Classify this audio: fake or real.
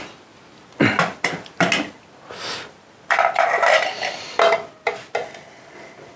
real